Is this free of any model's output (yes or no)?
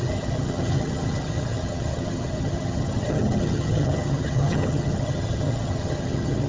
no